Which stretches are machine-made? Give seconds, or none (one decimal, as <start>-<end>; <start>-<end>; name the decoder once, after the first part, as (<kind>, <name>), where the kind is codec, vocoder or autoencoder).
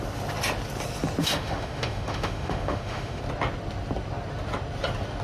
1.2-3.2 (autoencoder, DAC-VAE)